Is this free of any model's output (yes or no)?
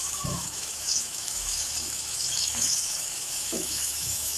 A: no